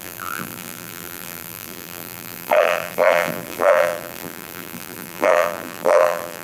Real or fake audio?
fake